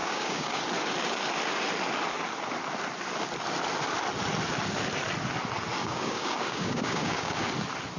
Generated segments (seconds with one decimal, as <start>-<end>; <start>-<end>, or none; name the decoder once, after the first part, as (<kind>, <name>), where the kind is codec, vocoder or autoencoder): 0.0-0.6 (codec, DAC); 5.8-7.5